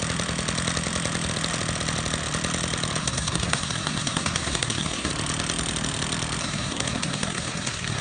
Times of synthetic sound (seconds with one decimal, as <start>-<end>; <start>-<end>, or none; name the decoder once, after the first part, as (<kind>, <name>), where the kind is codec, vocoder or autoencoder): 3.0-5.1 (codec, SNAC); 6.4-8.0